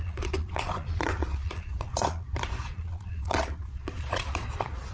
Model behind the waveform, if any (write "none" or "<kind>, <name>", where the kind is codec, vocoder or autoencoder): vocoder, Vocos